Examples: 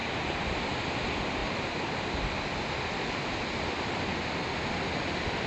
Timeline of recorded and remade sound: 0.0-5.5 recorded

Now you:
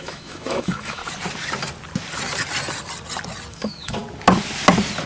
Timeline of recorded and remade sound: 0.0-1.0 remade; 1.0-3.5 recorded; 3.5-4.0 remade; 4.0-5.1 recorded

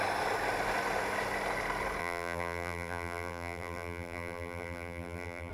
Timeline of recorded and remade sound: 0.0-2.0 recorded; 2.0-5.5 remade